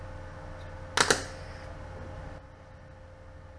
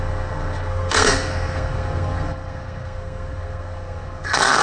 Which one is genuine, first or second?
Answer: first